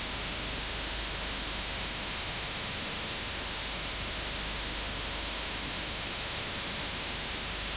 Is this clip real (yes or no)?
no